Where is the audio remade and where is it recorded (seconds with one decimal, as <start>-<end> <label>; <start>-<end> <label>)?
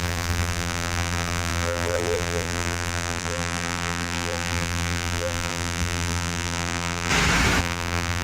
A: 0.0-7.1 remade; 7.1-7.6 recorded; 7.6-8.2 remade